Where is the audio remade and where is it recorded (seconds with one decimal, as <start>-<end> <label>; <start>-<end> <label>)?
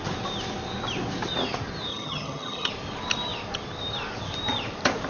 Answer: 0.0-1.9 recorded; 1.9-2.7 remade; 2.7-5.1 recorded